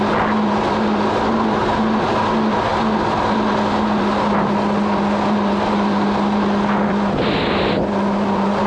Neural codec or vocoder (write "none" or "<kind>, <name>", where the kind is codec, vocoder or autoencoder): none